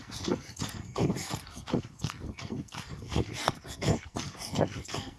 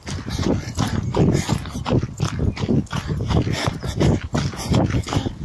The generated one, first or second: first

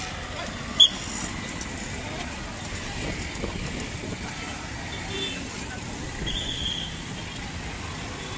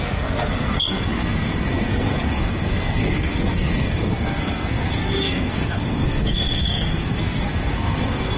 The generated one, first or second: second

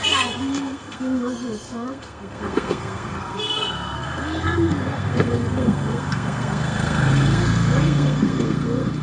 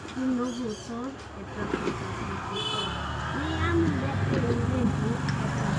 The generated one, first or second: first